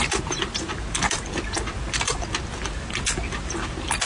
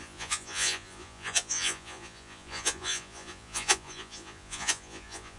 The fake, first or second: second